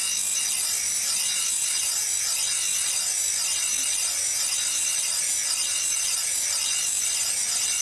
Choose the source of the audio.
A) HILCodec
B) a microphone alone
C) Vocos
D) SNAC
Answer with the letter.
B